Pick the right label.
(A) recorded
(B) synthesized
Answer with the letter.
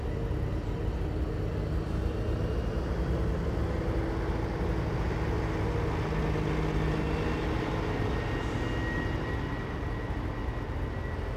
A